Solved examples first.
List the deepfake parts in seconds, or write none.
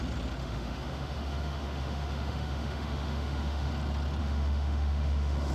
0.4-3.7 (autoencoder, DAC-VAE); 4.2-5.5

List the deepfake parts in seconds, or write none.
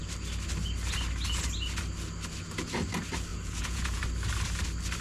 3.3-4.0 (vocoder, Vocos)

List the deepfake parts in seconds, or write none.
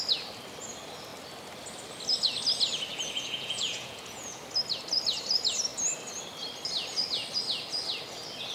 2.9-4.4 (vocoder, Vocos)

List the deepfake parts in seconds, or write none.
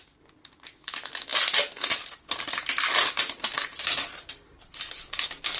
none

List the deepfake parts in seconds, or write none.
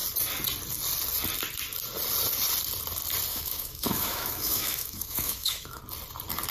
3.3-5.8 (autoencoder, DAC-VAE)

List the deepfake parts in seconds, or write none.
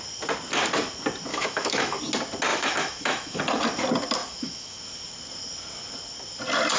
1.3-2.0 (autoencoder, DAC-VAE); 2.5-3.4; 4.2-4.8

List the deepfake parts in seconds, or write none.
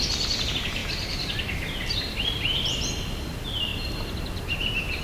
0.8-2.8 (vocoder, BigVGAN v2)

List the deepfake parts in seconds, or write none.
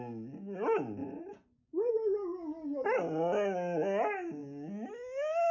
1.0-1.9 (vocoder, Vocos)